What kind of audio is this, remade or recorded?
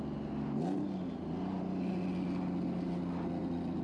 recorded